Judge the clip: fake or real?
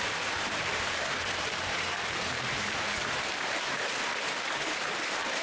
fake